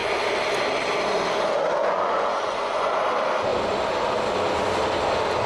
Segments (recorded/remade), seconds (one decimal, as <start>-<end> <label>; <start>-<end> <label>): 0.0-1.8 recorded; 1.8-3.0 remade; 3.0-5.5 recorded